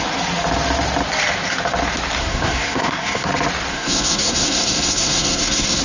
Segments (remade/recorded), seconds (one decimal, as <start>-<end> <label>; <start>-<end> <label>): 0.0-2.2 recorded; 2.2-3.3 remade; 3.3-3.7 recorded; 3.7-5.8 remade